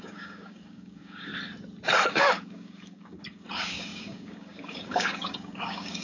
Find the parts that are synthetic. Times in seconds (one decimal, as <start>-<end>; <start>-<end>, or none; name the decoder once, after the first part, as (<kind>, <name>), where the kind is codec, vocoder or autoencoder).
0.0-1.3 (codec, DAC); 2.1-6.0